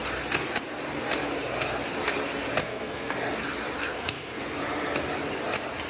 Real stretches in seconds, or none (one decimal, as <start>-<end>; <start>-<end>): 0.0-2.6; 3.1-3.9; 4.4-5.9